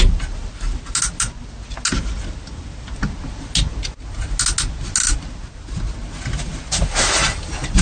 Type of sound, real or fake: real